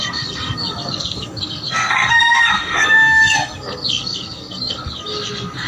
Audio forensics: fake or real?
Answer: fake